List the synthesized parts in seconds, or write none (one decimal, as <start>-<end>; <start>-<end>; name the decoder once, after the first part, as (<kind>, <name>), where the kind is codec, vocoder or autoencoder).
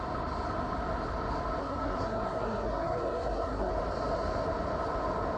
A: 1.6-3.7 (codec, SNAC)